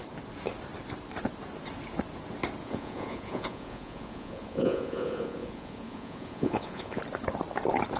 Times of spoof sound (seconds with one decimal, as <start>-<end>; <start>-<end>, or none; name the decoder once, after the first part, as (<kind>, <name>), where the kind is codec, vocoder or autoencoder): 2.6-7.0 (vocoder, Vocos)